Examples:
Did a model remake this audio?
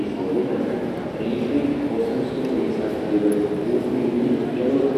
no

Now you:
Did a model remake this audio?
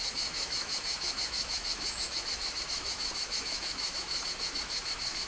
yes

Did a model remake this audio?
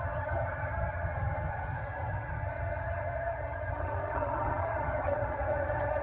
yes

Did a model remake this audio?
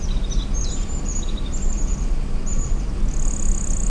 no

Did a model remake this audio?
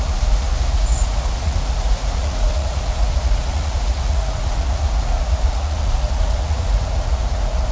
yes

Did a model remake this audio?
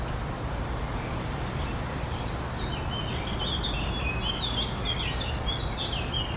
no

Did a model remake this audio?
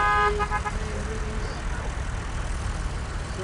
no